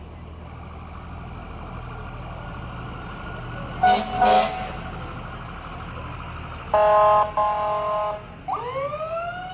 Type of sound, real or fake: real